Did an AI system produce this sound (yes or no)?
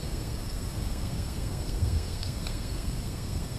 yes